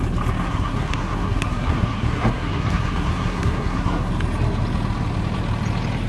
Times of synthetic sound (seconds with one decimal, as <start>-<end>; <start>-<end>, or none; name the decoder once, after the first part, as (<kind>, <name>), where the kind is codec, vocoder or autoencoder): 0.4-4.1 (codec, SNAC)